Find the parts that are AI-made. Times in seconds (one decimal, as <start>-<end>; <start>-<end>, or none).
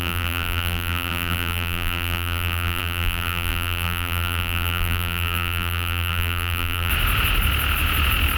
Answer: 0.0-6.9